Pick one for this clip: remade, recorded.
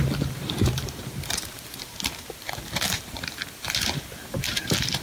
remade